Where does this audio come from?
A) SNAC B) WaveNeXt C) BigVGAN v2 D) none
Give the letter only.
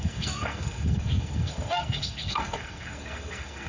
A